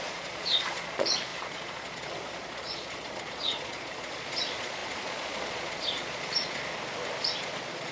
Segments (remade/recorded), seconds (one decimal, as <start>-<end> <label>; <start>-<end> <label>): 0.0-6.6 remade; 6.6-7.4 recorded; 7.4-7.9 remade